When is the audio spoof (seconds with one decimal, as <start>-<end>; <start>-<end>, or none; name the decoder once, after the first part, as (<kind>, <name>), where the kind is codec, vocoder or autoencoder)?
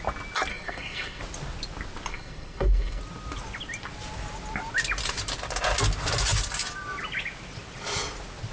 0.5-1.2 (codec, SNAC); 2.1-3.0